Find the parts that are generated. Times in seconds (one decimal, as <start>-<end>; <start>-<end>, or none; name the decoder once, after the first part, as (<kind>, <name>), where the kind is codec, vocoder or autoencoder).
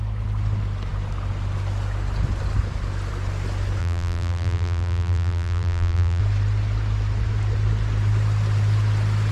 3.8-6.2 (vocoder, BigVGAN v2)